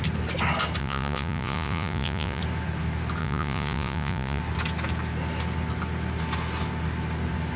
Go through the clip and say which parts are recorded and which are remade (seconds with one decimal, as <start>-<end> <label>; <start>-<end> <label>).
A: 0.0-0.8 recorded; 0.8-2.4 remade; 2.4-3.2 recorded; 3.2-4.4 remade; 4.4-7.6 recorded